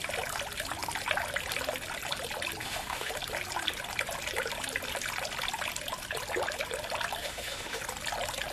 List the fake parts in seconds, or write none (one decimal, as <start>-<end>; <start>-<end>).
2.6-3.1; 7.2-7.8